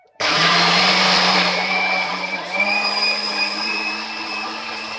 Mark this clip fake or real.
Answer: fake